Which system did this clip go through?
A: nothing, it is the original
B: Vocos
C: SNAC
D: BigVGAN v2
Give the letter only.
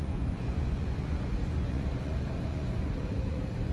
B